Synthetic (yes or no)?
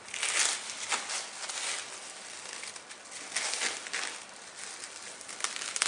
no